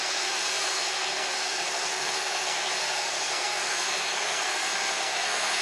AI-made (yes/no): yes